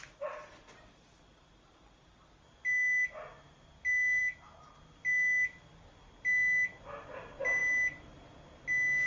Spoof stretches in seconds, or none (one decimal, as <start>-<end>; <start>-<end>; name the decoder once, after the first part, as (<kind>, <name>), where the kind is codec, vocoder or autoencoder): none